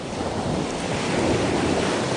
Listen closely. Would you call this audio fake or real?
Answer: real